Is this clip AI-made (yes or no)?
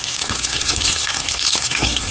yes